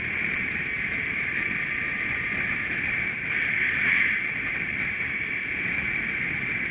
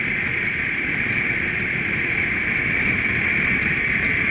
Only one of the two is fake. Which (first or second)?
first